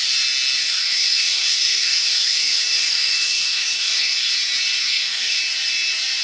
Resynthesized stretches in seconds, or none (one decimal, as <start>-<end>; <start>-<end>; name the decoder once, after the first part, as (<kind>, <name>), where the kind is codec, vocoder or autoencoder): 0.6-4.3 (codec, DAC); 4.8-5.4